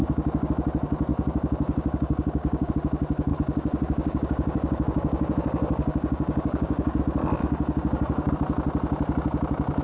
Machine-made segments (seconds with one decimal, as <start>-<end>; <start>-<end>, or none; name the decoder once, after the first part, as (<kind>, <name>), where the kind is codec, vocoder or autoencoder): 0.0-0.5 (codec, DAC); 1.1-2.7; 3.3-7.0; 7.4-8.3